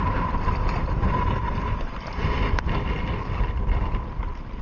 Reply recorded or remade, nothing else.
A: remade